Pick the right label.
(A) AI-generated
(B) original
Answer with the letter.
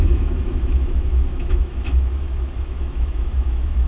A